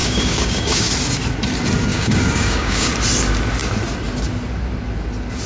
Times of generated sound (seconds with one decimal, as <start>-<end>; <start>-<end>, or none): 0.0-0.9; 1.9-2.9